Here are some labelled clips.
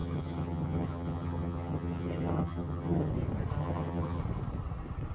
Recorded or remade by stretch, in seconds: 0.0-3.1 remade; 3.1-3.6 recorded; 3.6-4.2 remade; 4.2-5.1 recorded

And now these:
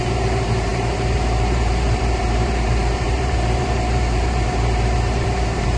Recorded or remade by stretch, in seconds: 0.0-5.8 remade

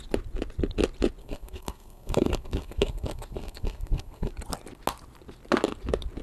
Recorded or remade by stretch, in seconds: 0.0-1.2 recorded; 1.2-4.3 remade; 4.3-6.2 recorded

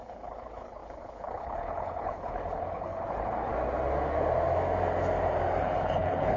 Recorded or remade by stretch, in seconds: 0.0-3.5 remade; 3.5-5.6 recorded; 5.6-6.4 remade